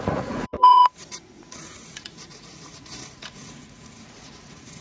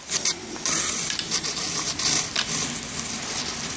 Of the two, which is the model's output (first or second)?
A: first